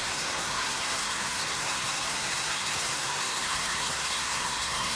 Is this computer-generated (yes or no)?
yes